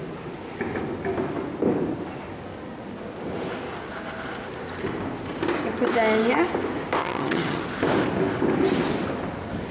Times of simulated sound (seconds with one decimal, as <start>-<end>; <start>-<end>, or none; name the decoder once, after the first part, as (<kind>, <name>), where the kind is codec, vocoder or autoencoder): 7.0-7.6 (vocoder, HiFi-GAN)